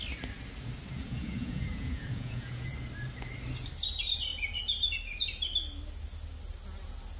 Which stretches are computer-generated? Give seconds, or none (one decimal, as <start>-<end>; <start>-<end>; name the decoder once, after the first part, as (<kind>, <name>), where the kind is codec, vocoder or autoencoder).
1.0-2.7 (vocoder, Vocos)